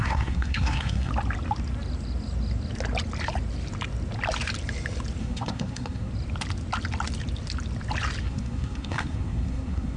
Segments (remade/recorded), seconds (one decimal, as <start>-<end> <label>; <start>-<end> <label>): 0.0-1.1 remade; 1.1-5.2 recorded; 5.2-6.1 remade; 6.1-8.2 recorded; 8.2-10.0 remade